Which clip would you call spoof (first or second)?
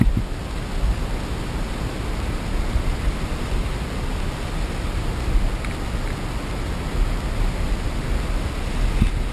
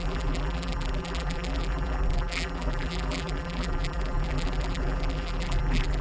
second